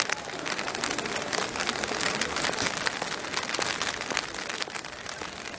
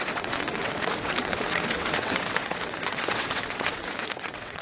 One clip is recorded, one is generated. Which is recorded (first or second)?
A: first